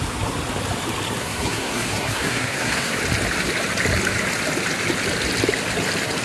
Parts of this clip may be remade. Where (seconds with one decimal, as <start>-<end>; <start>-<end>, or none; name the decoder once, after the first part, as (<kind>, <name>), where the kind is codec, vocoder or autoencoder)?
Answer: 1.2-3.0 (codec, SNAC)